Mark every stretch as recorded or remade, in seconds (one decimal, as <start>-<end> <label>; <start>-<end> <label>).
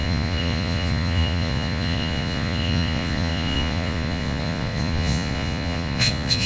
0.0-6.5 remade